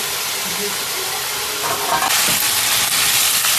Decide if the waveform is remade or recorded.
recorded